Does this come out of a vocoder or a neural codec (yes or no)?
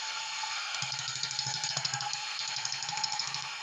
yes